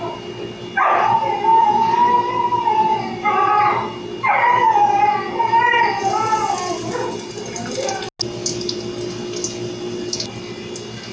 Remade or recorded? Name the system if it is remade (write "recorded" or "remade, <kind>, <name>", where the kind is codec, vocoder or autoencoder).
recorded